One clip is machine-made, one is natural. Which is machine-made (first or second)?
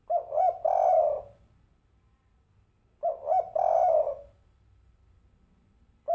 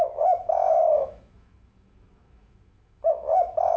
second